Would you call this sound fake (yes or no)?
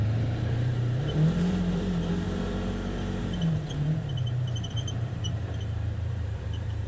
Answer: yes